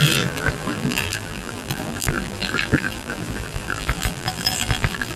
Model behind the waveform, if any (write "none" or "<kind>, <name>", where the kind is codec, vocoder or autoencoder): vocoder, BigVGAN v2